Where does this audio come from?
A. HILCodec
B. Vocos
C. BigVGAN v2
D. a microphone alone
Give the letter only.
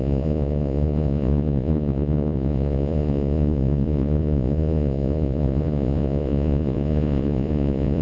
B